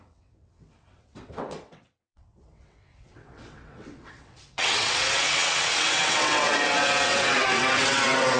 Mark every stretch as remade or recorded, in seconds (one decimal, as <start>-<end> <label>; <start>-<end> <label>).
0.0-8.4 remade